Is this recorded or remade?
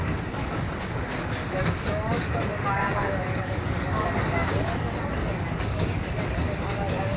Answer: remade